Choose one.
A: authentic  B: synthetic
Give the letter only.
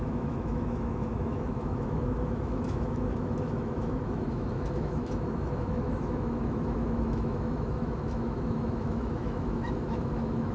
B